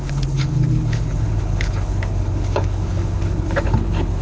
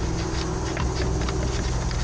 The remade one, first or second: first